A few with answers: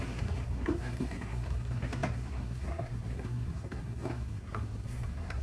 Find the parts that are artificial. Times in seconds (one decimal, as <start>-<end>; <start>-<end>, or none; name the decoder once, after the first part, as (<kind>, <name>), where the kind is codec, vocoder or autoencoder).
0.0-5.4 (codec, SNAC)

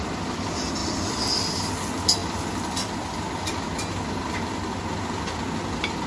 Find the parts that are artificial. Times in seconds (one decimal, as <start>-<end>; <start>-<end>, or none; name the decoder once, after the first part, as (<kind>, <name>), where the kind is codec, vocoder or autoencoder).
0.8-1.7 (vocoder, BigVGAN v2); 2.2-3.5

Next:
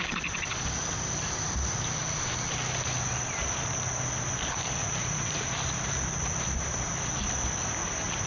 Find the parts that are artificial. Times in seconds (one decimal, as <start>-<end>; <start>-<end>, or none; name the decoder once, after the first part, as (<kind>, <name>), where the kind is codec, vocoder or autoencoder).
4.8-5.5 (vocoder, Vocos)

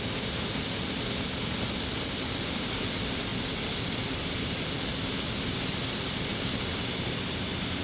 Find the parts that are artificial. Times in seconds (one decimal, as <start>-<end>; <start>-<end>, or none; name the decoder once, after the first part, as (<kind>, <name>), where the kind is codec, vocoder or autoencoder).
none

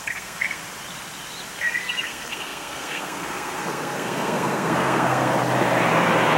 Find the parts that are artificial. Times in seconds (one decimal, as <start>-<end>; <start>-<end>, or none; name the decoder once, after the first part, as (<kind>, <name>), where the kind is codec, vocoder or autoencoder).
0.0-0.6 (codec, SNAC); 1.6-5.3